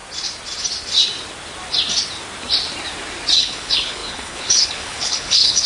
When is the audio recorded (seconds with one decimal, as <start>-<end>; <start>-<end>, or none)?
0.0-3.4